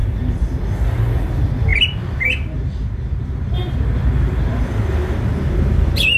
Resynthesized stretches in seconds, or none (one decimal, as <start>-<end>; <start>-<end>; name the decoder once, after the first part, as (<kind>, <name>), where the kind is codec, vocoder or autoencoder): 0.0-0.6 (vocoder, BigVGAN v2)